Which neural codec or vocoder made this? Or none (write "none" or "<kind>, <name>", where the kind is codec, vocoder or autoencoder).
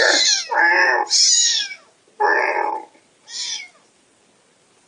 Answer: none